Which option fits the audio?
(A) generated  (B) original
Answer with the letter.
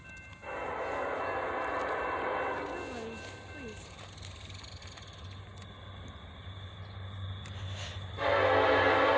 B